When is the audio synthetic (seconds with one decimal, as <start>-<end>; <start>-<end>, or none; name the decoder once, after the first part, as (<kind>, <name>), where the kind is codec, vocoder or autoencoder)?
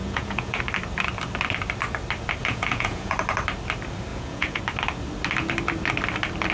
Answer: 0.0-0.6 (vocoder, Vocos); 2.4-3.1; 4.1-4.6